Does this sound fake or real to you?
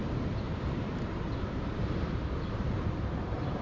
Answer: fake